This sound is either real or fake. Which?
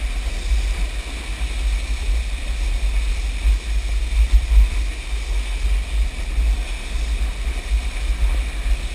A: real